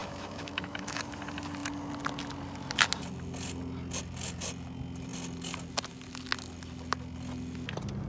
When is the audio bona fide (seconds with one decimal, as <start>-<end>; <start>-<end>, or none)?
1.0-8.1